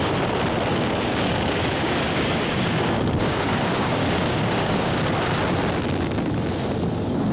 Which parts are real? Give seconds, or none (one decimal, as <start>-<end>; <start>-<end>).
0.0-0.7; 5.1-7.3